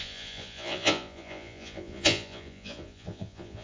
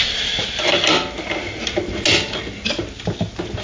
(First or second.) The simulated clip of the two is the first